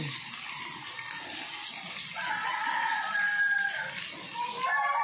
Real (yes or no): yes